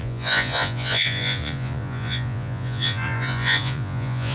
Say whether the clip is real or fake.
fake